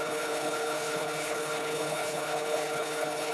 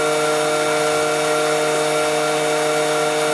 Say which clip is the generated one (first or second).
first